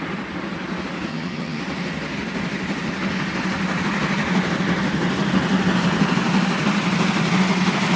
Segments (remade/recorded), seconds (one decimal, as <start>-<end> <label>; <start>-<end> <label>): 0.0-1.1 recorded; 1.1-1.6 remade; 1.6-8.0 recorded